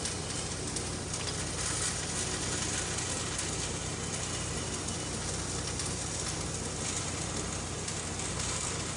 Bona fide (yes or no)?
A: yes